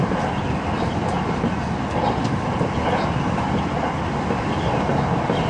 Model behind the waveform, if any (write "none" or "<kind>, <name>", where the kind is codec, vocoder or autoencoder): none